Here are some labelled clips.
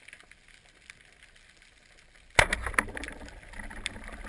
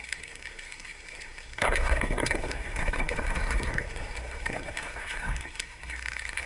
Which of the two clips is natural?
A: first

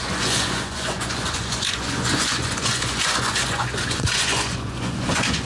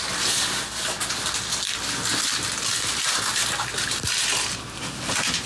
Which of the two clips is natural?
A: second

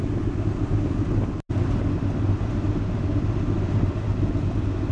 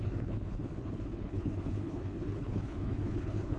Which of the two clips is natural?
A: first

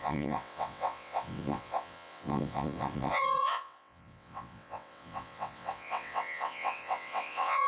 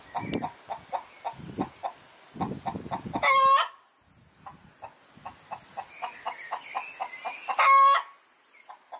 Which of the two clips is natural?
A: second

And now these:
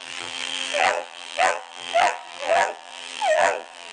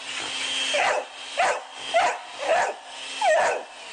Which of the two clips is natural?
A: second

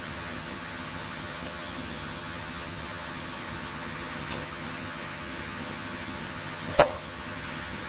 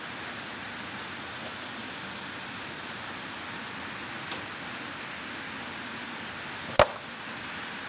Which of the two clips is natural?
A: second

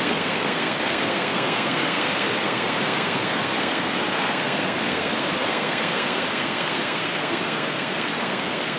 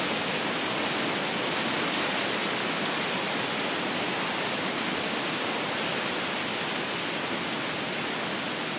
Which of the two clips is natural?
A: second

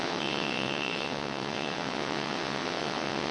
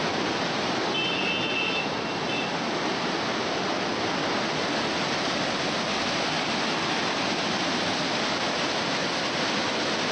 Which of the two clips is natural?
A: second